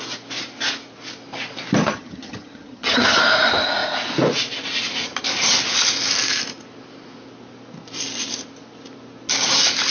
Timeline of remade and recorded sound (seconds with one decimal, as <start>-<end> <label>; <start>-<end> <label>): 0.0-1.8 recorded; 1.8-3.2 remade; 3.2-9.9 recorded